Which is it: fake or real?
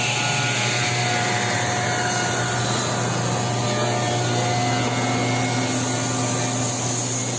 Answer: real